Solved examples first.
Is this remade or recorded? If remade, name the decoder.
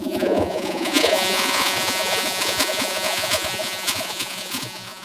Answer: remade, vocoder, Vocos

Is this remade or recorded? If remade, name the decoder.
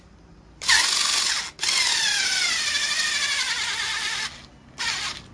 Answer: recorded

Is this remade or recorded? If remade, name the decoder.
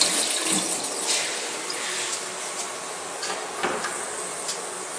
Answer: recorded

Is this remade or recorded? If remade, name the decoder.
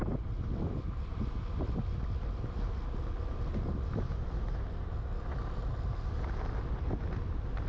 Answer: recorded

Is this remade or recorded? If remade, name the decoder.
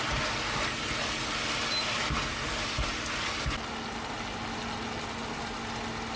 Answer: recorded